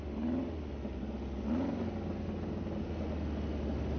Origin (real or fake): real